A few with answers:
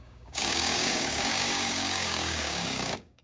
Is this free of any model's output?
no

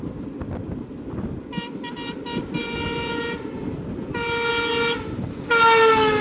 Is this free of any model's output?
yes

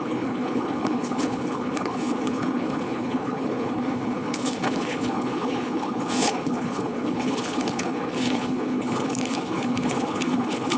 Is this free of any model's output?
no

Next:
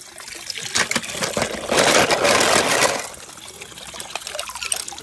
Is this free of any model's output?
yes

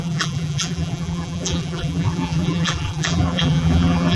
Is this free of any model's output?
no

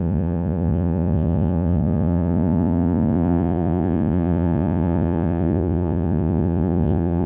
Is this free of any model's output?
no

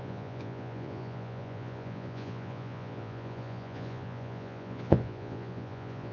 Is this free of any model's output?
no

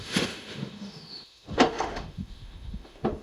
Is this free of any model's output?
no